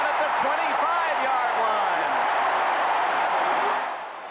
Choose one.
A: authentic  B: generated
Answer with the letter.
A